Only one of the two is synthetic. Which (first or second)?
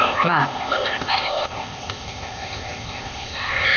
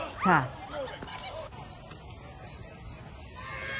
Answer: first